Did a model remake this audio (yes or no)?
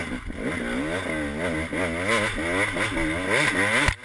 no